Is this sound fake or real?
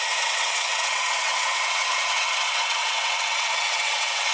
fake